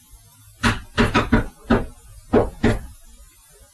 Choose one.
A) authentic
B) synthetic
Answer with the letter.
A